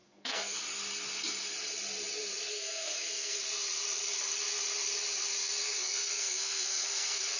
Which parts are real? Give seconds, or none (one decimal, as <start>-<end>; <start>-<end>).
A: 0.6-2.5; 3.4-5.6